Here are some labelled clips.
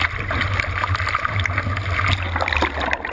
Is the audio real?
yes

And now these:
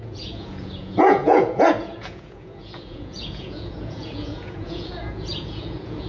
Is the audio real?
no